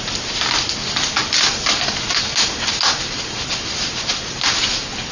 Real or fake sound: real